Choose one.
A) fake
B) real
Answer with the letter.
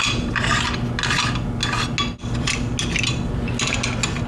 B